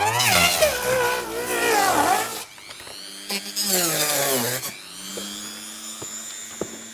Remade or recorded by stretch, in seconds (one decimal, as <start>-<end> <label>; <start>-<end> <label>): 0.0-6.9 recorded